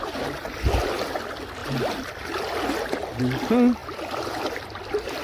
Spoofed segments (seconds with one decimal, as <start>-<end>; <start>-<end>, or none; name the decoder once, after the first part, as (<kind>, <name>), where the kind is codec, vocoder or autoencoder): 3.8-4.8 (vocoder, BigVGAN v2)